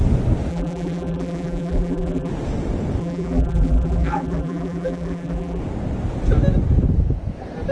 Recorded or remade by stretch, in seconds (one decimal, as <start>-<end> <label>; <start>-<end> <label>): 0.0-0.5 recorded; 0.5-2.3 remade; 2.3-3.0 recorded; 3.0-5.6 remade; 5.6-7.7 recorded

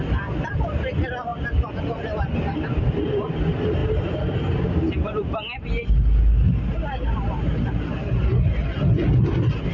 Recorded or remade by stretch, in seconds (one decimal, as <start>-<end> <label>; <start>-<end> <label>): 0.0-9.7 recorded

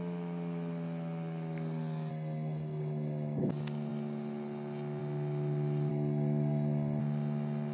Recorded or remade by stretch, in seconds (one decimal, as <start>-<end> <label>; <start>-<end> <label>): 0.0-2.1 recorded; 2.1-3.5 remade; 3.5-5.9 recorded; 5.9-7.0 remade; 7.0-7.7 recorded

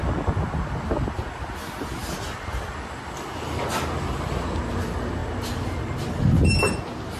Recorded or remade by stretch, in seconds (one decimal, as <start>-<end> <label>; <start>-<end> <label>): 0.0-7.2 recorded

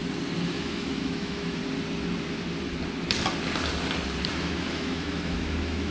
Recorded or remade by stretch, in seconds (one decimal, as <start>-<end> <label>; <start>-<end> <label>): 0.0-0.5 recorded; 0.5-1.6 remade; 1.6-4.3 recorded; 4.3-5.9 remade

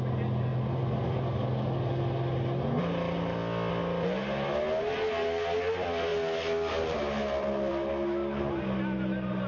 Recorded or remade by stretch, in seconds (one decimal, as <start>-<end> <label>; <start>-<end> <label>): 0.0-9.5 recorded